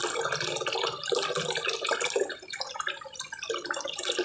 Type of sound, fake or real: real